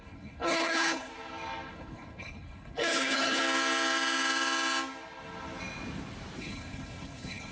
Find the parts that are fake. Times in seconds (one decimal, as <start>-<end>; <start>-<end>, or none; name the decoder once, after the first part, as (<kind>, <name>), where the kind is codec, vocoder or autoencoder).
0.0-1.1 (codec, HILCodec); 1.7-3.4; 6.4-7.5